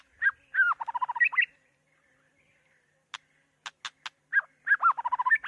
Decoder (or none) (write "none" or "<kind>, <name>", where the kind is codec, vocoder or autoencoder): none